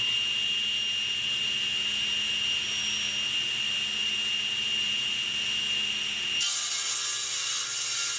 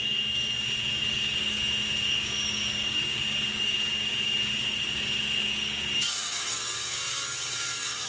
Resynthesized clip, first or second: second